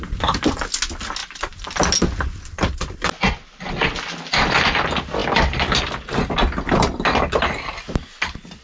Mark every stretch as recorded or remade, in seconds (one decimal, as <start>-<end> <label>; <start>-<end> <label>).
0.0-8.6 recorded